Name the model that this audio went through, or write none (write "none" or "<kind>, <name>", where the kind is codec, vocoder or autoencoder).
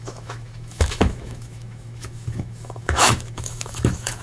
autoencoder, DAC-VAE